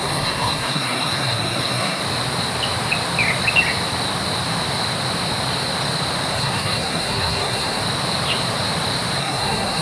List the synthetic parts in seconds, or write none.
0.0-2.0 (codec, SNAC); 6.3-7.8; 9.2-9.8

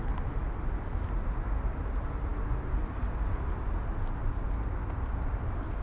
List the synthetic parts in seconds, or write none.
none